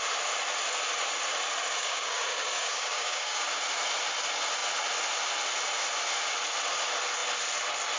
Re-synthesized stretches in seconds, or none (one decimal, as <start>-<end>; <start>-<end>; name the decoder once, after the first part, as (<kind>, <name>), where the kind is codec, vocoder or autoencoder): 1.8-3.6 (codec, DAC)